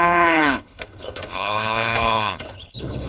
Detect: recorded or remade remade